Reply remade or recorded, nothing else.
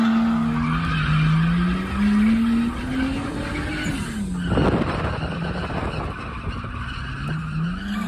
recorded